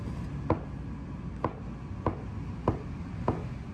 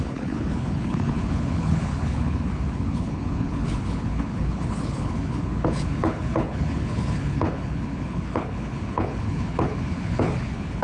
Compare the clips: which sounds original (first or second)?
first